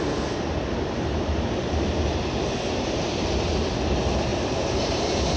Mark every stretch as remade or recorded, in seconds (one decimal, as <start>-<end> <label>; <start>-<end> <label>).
0.0-1.6 recorded; 1.6-3.3 remade; 3.3-4.3 recorded; 4.3-5.4 remade

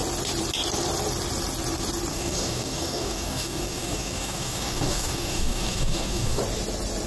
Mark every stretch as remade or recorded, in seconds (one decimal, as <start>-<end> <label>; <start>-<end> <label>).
0.0-2.1 recorded; 2.1-6.4 remade; 6.4-7.1 recorded

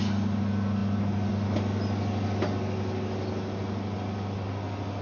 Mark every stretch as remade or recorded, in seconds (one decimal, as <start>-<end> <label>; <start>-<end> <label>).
0.0-5.0 recorded